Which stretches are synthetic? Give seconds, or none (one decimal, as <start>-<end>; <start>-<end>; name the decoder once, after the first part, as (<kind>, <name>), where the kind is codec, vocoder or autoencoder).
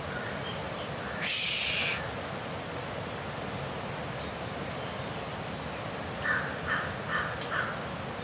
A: none